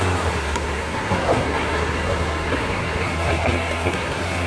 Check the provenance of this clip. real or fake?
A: fake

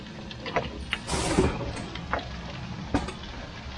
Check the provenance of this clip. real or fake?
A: real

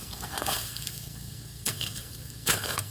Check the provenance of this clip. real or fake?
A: fake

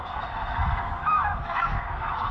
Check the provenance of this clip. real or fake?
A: fake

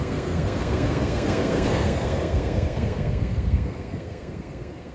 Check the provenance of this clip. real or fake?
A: fake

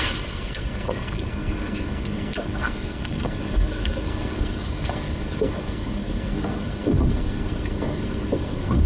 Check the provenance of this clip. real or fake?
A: fake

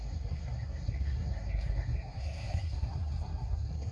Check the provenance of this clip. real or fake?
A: fake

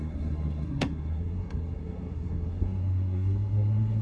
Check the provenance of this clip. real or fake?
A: fake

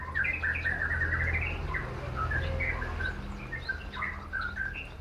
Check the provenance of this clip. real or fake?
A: real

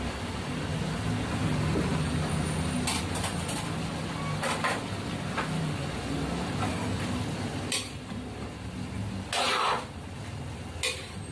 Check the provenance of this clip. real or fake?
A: real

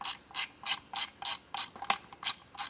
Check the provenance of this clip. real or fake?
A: real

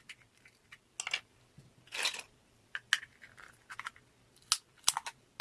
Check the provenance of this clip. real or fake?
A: real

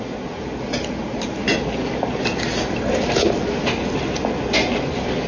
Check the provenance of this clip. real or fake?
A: real